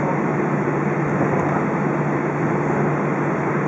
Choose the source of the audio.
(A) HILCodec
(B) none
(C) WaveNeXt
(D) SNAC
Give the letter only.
B